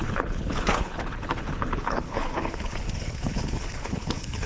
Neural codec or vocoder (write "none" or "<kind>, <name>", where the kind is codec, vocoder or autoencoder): codec, HILCodec